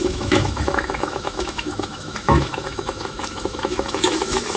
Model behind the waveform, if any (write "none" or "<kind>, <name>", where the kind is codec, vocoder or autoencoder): autoencoder, DAC-VAE